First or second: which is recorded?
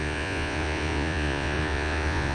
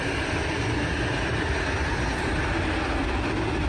second